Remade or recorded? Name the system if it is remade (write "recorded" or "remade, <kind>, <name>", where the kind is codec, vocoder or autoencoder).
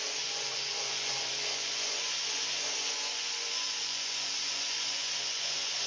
remade, vocoder, Vocos